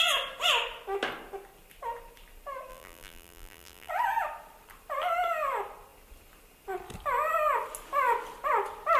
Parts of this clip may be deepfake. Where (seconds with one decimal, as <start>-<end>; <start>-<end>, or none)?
2.7-3.9